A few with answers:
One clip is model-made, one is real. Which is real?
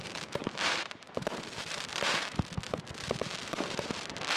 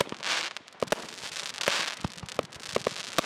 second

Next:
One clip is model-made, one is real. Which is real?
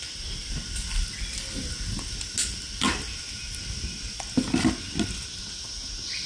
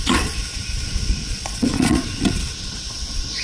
first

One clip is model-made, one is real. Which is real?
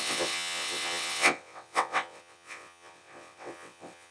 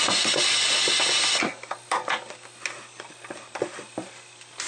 second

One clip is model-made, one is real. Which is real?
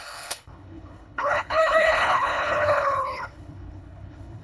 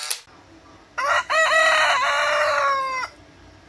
second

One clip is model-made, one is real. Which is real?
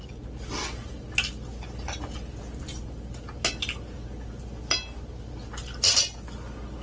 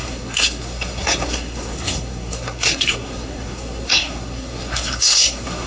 first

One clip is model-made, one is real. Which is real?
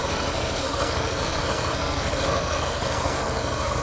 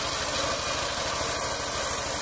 second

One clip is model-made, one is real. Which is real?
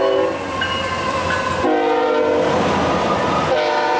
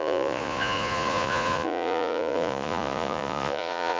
first